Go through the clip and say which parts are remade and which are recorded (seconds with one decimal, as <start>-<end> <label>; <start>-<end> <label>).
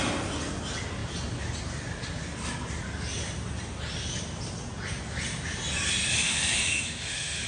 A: 0.0-6.1 recorded; 6.1-7.5 remade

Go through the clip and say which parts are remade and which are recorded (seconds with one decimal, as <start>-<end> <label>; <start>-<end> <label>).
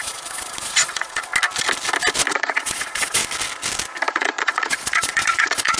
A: 0.0-1.3 remade; 1.3-2.3 recorded; 2.3-3.2 remade; 3.2-4.1 recorded; 4.1-5.8 remade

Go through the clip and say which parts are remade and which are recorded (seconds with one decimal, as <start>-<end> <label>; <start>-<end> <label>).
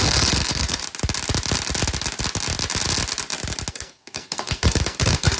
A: 0.0-0.8 remade; 0.8-3.7 recorded; 3.7-5.4 remade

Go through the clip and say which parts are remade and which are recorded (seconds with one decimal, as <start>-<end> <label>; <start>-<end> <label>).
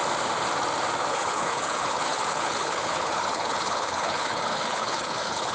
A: 0.0-1.1 recorded; 1.1-5.5 remade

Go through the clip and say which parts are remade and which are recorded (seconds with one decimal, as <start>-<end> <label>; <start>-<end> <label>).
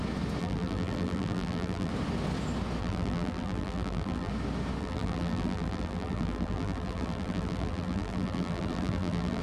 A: 0.0-0.4 recorded; 0.4-1.9 remade; 1.9-2.8 recorded; 2.8-4.3 remade; 4.3-4.8 recorded; 4.8-9.4 remade